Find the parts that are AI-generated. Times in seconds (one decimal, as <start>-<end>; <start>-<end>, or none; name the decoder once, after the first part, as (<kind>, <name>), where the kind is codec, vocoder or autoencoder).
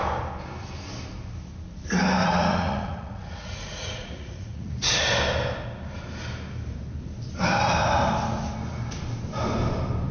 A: 2.2-4.7 (vocoder, Vocos)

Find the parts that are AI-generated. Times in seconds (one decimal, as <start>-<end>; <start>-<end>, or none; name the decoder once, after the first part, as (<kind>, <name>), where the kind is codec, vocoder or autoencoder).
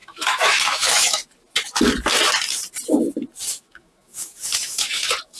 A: 0.0-1.2 (autoencoder, DAC-VAE); 3.5-5.4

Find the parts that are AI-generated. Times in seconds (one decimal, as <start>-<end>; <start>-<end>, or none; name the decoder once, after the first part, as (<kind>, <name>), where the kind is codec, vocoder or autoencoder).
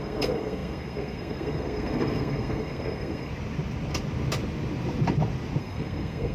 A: 0.0-3.3 (codec, SNAC); 5.6-6.3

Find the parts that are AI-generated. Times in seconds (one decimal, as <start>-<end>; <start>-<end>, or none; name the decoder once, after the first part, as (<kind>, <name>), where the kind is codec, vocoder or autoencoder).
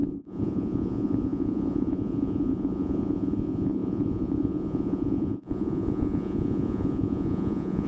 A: 0.0-7.9 (vocoder, Vocos)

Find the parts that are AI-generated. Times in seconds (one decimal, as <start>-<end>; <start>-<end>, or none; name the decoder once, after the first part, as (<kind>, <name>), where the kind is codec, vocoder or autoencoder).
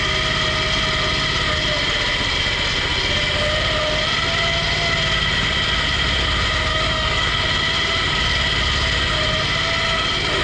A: 6.7-7.3 (codec, DAC)